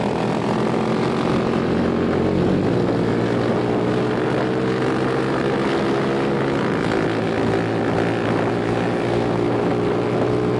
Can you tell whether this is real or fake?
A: real